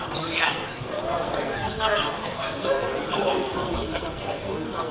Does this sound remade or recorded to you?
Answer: remade